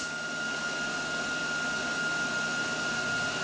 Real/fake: real